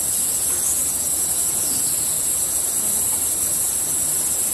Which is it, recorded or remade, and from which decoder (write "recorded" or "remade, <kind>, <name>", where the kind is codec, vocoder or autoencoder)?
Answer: recorded